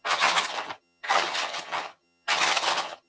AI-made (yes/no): yes